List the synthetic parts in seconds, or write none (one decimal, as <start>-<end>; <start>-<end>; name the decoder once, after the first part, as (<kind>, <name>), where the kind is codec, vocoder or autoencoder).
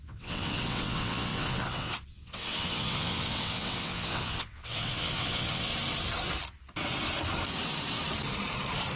0.0-5.7 (vocoder, WaveNeXt)